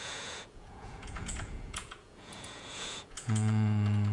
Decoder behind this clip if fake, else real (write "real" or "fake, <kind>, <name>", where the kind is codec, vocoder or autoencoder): fake, vocoder, Vocos